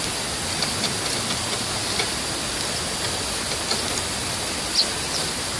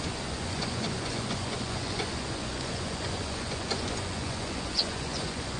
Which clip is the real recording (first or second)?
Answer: first